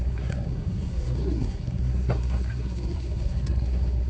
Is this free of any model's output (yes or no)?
no